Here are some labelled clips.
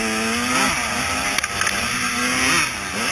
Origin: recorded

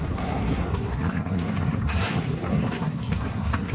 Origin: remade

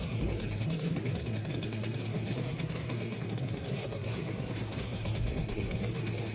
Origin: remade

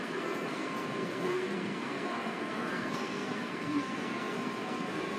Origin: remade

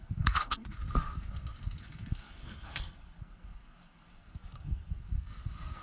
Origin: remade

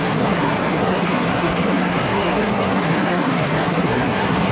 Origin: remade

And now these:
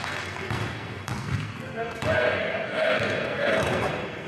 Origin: remade